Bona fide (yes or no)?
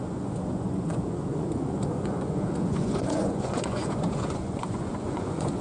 no